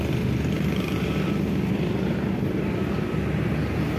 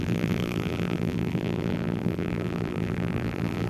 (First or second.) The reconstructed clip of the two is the second